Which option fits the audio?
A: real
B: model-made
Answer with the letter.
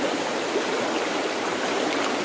A